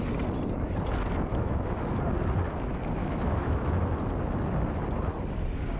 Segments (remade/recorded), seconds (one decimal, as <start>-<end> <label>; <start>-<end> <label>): 0.0-1.3 recorded; 1.3-2.0 remade; 2.0-3.0 recorded; 3.0-3.8 remade; 3.8-5.8 recorded